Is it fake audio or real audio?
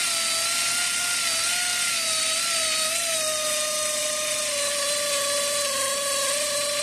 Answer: real